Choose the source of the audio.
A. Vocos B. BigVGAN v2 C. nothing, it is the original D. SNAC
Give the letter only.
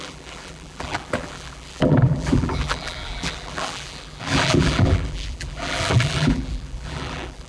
B